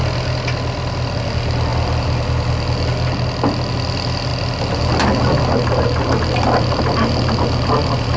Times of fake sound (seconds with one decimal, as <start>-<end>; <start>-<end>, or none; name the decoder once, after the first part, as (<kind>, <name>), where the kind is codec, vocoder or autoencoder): none